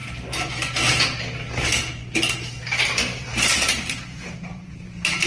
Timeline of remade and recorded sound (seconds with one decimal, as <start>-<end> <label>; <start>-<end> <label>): 0.0-2.8 recorded; 2.8-5.3 remade